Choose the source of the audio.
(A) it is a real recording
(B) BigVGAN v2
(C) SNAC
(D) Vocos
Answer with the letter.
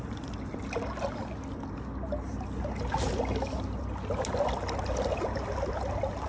A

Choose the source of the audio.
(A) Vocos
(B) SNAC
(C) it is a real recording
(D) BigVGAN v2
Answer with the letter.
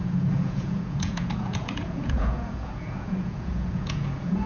A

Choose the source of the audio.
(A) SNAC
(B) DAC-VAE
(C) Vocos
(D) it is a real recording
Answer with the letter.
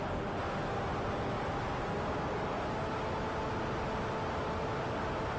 D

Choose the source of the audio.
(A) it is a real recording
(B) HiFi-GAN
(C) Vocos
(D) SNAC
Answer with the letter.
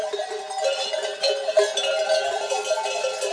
A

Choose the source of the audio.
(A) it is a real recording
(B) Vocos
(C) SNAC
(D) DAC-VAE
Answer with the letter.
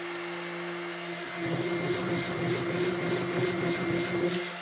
A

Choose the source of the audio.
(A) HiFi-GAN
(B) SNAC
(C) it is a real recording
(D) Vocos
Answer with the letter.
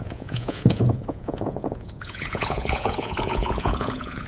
D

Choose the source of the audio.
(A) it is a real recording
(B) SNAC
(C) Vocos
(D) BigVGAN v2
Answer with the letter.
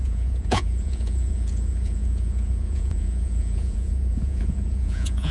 C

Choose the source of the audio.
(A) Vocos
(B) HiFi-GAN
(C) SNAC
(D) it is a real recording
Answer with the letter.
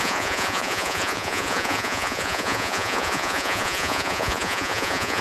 A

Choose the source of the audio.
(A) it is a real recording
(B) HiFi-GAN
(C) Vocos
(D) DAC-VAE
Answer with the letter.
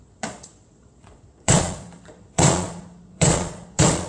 C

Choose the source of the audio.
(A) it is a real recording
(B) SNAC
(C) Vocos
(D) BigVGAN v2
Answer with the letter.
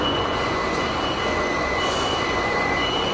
C